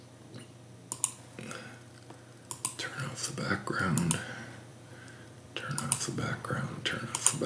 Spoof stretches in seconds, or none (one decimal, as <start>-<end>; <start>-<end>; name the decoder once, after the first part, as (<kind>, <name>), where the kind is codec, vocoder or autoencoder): 4.7-7.5 (vocoder, BigVGAN v2)